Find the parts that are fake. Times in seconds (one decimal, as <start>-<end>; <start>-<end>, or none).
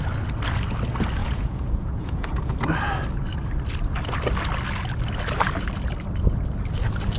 1.2-2.3